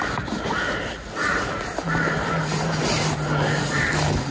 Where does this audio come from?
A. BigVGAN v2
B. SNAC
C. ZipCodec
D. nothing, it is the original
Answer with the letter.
D